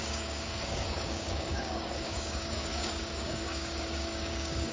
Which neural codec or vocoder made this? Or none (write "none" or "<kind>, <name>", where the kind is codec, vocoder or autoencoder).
codec, DAC